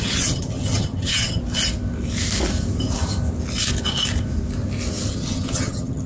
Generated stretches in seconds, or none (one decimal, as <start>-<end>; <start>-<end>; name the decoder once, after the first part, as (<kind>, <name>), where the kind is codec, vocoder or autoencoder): 0.0-1.4 (vocoder, HiFi-GAN); 5.1-6.1